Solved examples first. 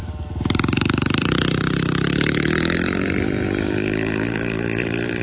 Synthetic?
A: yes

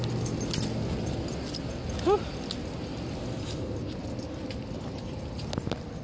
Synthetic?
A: no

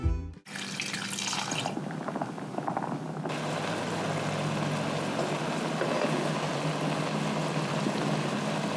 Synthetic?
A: no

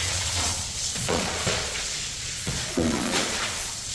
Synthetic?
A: yes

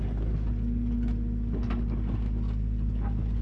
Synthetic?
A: no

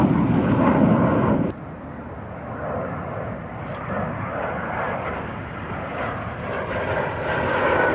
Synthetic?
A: no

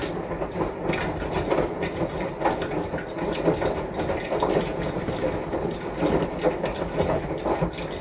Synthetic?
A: no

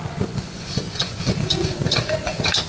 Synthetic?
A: yes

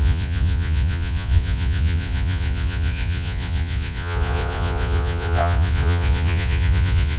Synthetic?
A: yes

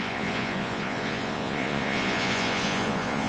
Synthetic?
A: yes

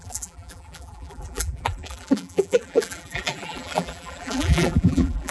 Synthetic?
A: yes